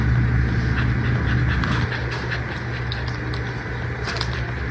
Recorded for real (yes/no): yes